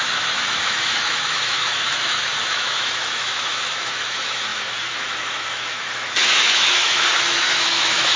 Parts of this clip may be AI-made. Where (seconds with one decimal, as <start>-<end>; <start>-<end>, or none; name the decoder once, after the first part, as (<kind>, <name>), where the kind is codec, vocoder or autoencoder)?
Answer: 0.0-8.2 (autoencoder, DAC-VAE)